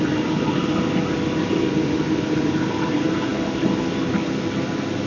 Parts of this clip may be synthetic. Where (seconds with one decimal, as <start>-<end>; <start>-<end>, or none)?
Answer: none